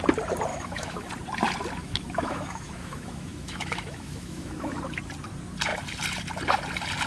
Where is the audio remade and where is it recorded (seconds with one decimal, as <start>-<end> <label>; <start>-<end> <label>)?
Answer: 0.0-0.5 recorded; 0.5-1.1 remade; 1.1-1.8 recorded; 1.8-4.8 remade; 4.8-7.1 recorded